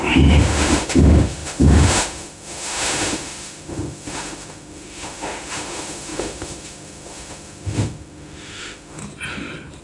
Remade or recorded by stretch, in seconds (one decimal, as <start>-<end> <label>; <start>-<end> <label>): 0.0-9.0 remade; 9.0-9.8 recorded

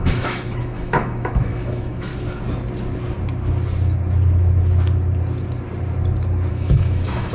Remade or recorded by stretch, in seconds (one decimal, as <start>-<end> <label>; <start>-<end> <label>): 0.0-2.1 remade; 2.1-6.5 recorded; 6.5-7.3 remade

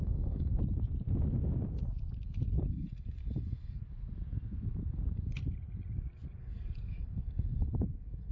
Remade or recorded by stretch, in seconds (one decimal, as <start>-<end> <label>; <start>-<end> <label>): 0.0-0.5 remade; 0.5-2.6 recorded; 2.6-3.8 remade; 3.8-6.4 recorded; 6.4-8.3 remade